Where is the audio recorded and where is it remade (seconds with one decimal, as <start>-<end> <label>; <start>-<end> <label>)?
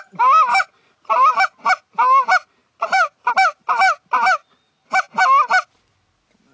0.0-0.5 recorded; 0.5-1.3 remade; 1.3-2.6 recorded; 2.6-5.2 remade; 5.2-6.5 recorded